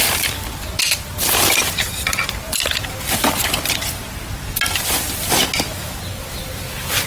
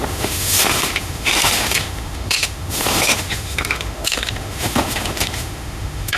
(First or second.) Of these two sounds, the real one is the first